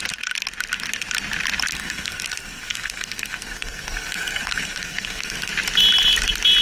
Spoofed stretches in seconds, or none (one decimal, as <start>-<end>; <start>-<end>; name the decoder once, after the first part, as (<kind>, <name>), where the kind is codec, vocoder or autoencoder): 1.7-5.5 (codec, SNAC)